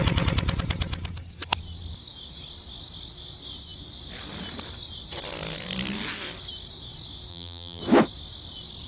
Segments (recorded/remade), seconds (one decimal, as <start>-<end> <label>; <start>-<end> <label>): 0.0-7.3 recorded; 7.3-7.8 remade; 7.8-8.9 recorded